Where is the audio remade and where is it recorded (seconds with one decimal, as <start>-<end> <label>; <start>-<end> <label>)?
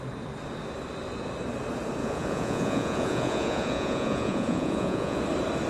0.0-2.0 recorded; 2.0-5.2 remade; 5.2-5.7 recorded